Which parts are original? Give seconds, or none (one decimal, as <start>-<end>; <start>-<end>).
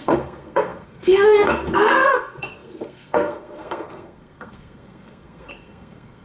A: none